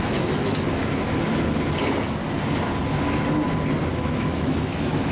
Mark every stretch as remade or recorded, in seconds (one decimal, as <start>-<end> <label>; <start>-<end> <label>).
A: 0.0-0.8 remade; 0.8-3.9 recorded; 3.9-5.1 remade